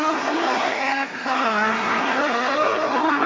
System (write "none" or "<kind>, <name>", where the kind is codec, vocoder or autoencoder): codec, SNAC